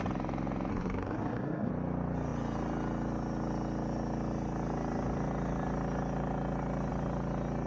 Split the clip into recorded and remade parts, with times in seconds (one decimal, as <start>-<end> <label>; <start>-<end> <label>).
0.0-0.7 recorded; 0.7-1.7 remade; 1.7-7.7 recorded